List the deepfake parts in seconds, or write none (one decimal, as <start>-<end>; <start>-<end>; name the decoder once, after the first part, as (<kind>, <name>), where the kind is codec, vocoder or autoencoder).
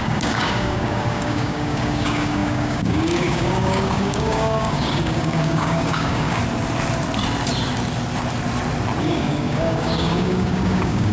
0.0-6.4 (codec, DAC); 9.0-11.1